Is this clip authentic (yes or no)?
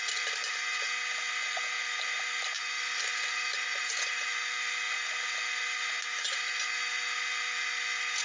yes